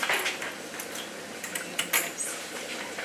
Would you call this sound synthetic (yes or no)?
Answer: no